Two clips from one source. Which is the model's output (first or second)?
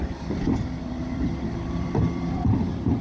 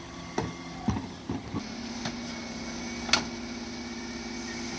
first